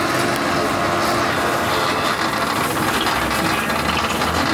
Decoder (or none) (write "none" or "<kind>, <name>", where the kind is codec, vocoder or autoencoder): none